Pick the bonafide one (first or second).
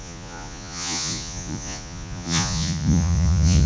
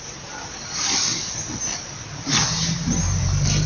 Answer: second